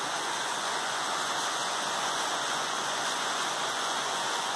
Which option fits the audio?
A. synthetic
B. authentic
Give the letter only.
A